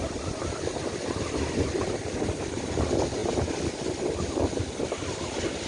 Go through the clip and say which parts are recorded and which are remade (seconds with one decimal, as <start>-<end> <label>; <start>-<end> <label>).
0.0-5.7 recorded